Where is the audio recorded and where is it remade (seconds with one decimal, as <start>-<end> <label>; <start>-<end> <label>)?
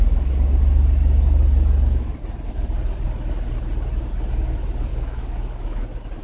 0.0-4.9 recorded; 4.9-5.8 remade; 5.8-6.2 recorded